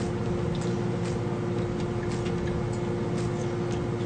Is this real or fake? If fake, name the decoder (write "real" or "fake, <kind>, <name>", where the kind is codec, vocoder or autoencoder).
real